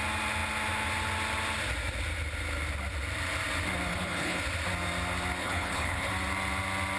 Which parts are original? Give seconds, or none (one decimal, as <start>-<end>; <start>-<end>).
0.0-3.9; 4.4-5.4; 6.1-7.0